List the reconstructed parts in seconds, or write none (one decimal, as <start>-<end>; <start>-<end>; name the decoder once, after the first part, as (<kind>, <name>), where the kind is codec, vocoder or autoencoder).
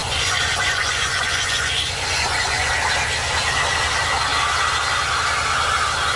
0.0-2.7 (vocoder, Vocos)